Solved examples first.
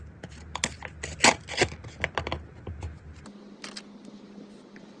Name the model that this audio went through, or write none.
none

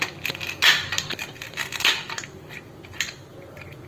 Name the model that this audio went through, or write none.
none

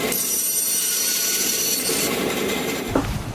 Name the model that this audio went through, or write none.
vocoder, BigVGAN v2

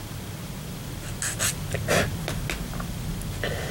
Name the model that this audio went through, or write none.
none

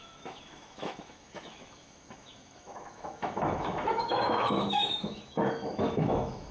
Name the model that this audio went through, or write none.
autoencoder, DAC-VAE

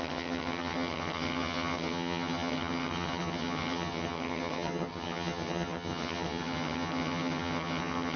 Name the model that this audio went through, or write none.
vocoder, HiFi-GAN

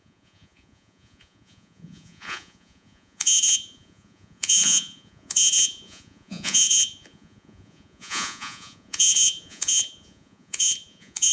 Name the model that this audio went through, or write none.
vocoder, Vocos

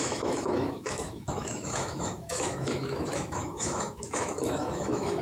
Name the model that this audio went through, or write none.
autoencoder, DAC-VAE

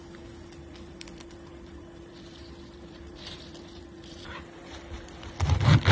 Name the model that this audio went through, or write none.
vocoder, BigVGAN v2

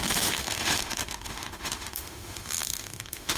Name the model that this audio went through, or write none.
autoencoder, DAC-VAE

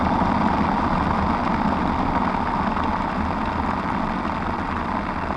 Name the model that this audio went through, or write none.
none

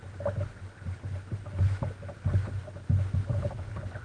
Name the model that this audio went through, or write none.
none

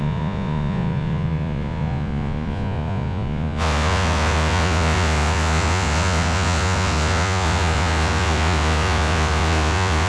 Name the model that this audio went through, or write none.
vocoder, Vocos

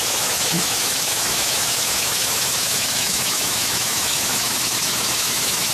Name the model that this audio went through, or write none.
autoencoder, DAC-VAE